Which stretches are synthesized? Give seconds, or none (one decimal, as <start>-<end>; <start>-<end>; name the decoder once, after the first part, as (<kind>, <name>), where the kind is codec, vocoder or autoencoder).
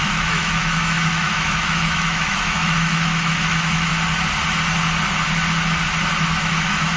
0.0-3.9 (autoencoder, DAC-VAE); 6.4-7.0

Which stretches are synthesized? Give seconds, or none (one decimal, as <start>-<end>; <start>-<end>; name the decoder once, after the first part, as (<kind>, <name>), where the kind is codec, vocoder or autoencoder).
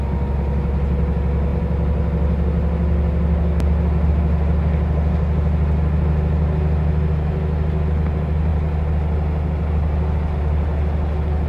none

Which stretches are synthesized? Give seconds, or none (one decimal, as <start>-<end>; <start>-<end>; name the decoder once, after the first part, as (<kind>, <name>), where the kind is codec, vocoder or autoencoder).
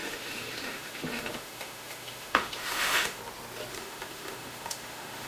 0.0-3.2 (autoencoder, DAC-VAE); 3.7-5.3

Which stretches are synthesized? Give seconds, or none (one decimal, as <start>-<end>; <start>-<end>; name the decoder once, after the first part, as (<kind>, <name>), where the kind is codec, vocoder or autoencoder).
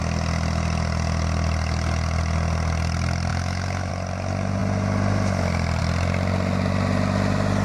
3.3-3.9 (autoencoder, DAC-VAE)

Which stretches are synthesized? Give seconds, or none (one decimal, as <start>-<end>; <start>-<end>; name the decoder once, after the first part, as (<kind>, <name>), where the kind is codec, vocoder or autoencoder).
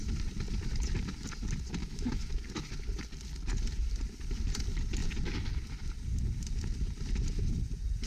1.8-2.3 (autoencoder, DAC-VAE)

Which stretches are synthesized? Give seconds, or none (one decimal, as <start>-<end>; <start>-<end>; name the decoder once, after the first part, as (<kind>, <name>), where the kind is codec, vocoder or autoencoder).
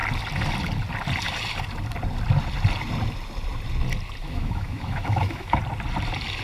4.2-5.6 (autoencoder, DAC-VAE)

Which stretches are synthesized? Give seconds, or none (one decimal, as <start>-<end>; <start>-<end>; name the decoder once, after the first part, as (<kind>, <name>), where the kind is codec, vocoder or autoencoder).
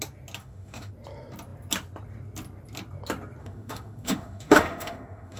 0.4-0.9 (autoencoder, DAC-VAE); 3.4-5.4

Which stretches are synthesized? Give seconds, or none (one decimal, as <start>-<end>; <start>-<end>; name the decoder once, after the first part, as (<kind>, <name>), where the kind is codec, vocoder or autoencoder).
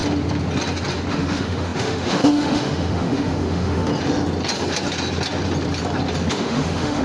1.1-3.9 (autoencoder, DAC-VAE); 6.3-7.0